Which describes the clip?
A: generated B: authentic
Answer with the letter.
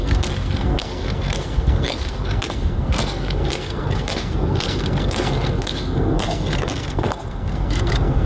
A